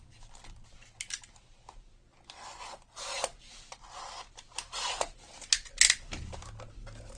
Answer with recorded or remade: recorded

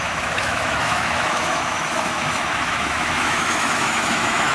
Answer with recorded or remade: remade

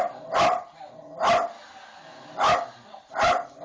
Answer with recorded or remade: recorded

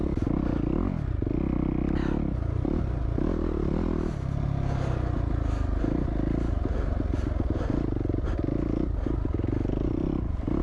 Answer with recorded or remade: recorded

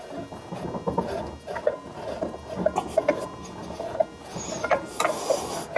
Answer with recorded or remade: recorded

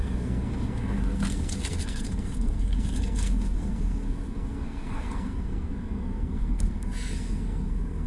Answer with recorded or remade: remade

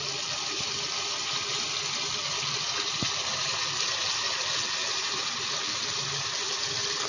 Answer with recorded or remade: recorded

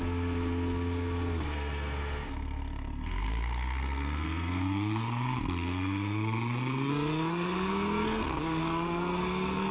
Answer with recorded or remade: remade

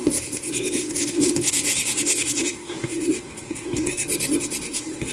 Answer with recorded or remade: remade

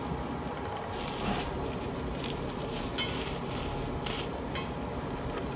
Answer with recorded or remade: recorded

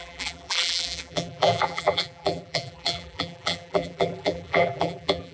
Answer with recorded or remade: remade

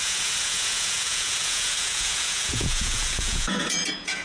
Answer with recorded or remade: remade